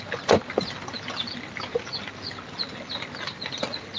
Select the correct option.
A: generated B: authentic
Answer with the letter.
B